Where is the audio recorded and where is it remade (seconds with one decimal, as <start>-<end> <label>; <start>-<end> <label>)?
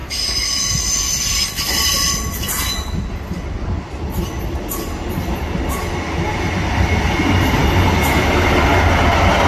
0.0-9.5 recorded